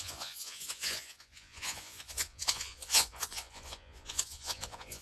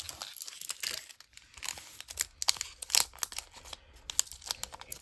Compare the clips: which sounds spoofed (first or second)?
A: first